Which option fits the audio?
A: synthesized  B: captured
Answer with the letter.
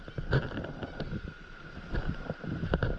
B